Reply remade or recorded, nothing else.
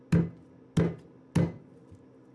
recorded